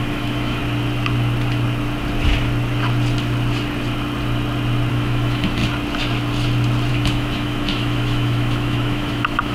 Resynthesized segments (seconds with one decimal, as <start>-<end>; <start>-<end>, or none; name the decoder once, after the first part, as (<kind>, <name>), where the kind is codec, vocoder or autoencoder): 0.0-0.6 (autoencoder, DAC-VAE); 4.9-5.6; 6.9-9.5